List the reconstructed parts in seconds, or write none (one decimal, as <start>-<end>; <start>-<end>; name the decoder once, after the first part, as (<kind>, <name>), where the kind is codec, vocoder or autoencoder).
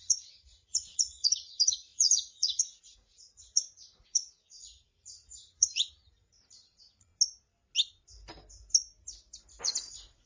0.0-7.1 (vocoder, Vocos); 9.6-10.3